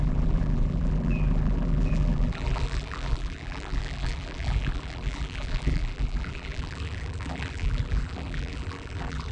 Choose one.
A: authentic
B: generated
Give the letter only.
B